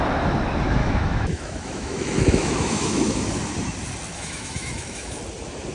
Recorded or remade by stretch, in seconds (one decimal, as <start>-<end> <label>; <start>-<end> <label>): 0.0-0.8 recorded; 0.8-3.2 remade; 3.2-4.1 recorded; 4.1-5.2 remade; 5.2-5.7 recorded